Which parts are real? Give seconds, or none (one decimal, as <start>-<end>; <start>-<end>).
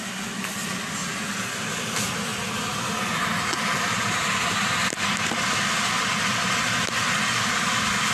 0.0-8.1